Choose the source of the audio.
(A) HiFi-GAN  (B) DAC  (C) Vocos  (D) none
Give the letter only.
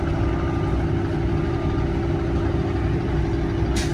D